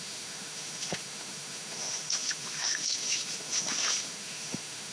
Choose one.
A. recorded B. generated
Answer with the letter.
B